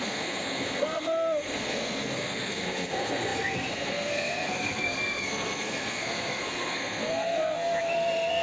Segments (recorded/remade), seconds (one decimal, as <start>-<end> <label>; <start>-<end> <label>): 0.0-8.4 remade